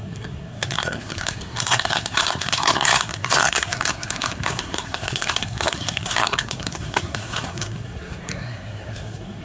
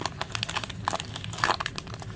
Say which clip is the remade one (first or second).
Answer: first